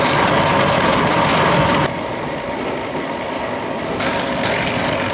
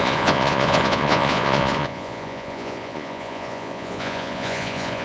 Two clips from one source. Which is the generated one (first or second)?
second